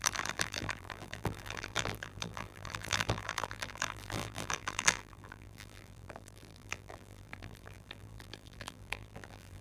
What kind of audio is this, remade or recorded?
remade